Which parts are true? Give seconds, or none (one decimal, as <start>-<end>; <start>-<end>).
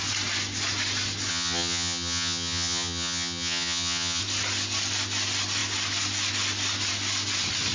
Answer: 0.0-1.3; 4.2-7.7